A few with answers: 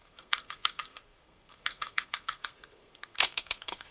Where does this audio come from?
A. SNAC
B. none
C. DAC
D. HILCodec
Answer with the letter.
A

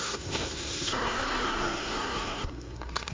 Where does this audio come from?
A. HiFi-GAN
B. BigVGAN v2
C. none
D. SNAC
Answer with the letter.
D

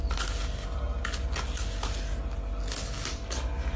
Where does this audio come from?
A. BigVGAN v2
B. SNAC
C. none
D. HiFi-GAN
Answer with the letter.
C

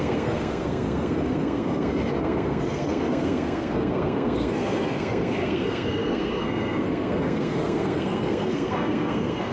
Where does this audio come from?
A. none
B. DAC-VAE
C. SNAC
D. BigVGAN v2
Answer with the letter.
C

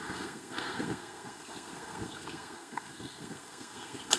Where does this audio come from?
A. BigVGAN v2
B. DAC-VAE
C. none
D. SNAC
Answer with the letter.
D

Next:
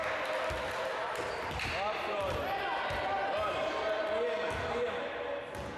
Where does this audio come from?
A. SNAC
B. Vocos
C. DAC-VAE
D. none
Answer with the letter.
D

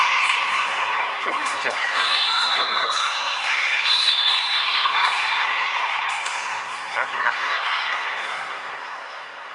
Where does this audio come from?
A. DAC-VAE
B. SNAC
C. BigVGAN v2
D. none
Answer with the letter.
B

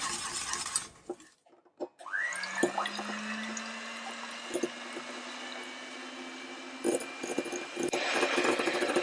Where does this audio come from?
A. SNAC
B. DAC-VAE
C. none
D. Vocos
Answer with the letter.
C